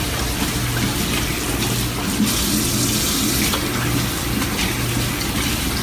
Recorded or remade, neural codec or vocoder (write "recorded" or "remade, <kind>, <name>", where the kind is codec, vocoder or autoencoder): recorded